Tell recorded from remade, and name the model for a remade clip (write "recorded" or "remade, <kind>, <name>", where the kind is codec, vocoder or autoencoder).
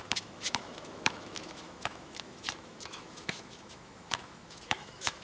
remade, autoencoder, DAC-VAE